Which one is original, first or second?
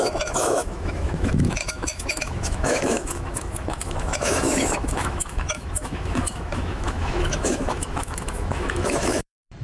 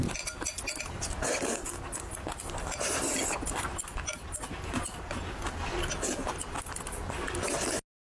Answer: second